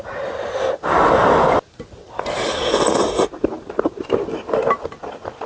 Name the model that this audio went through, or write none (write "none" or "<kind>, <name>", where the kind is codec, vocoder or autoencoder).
none